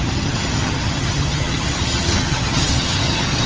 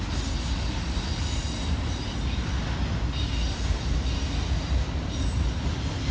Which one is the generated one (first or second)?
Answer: first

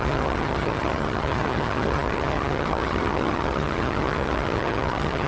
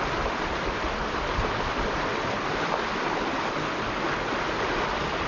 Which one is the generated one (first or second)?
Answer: first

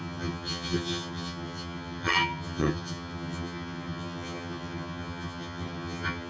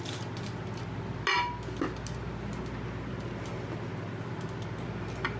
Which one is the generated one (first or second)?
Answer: first